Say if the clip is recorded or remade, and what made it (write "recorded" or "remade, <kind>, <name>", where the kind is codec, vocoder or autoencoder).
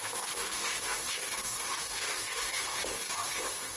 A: remade, codec, DAC